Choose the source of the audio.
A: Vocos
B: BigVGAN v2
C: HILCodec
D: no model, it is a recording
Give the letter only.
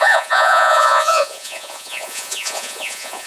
A